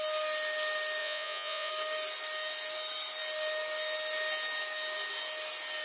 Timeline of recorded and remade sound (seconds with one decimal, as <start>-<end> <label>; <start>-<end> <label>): 0.0-1.0 recorded; 1.0-1.7 remade; 1.7-5.8 recorded